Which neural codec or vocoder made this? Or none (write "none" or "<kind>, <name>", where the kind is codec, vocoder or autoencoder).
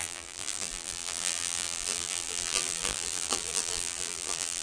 vocoder, BigVGAN v2